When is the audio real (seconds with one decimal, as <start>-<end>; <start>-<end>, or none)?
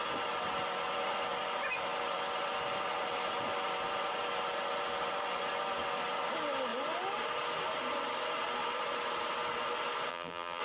0.0-10.1